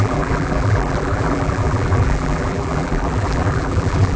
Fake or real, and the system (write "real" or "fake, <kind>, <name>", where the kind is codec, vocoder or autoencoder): fake, vocoder, BigVGAN v2